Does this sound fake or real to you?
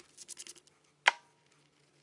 real